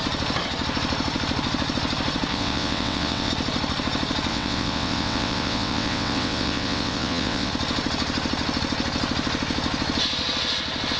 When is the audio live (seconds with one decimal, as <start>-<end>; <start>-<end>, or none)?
0.0-2.3; 3.3-4.3; 7.5-11.0